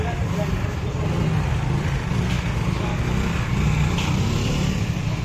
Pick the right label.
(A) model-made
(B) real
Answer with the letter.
B